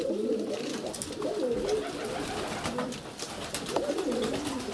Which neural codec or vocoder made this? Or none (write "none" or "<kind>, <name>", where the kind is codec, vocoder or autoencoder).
none